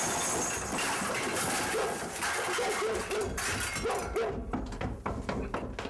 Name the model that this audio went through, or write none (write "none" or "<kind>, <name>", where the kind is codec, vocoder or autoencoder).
none